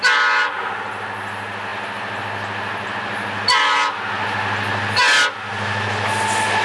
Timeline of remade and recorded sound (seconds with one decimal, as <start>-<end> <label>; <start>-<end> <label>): 0.0-6.6 recorded